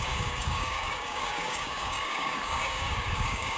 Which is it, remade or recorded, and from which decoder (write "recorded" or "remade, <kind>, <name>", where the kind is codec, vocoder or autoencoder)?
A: remade, codec, DAC